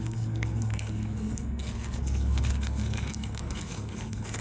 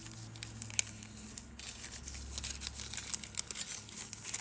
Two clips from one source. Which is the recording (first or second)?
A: second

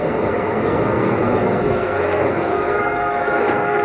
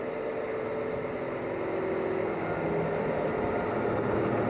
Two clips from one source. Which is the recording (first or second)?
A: second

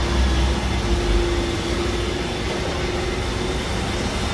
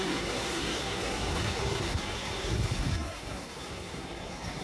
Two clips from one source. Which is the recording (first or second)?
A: first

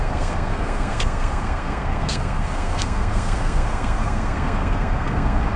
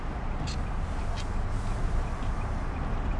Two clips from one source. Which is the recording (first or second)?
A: second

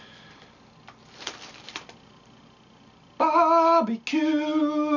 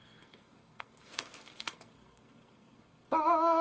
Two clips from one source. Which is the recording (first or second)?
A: first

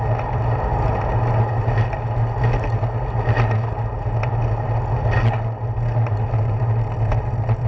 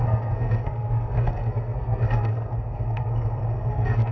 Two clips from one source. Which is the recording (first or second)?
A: first